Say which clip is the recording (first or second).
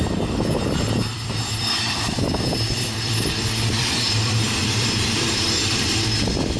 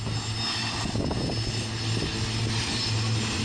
second